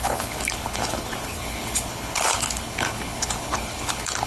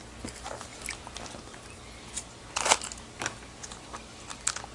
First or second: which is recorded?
second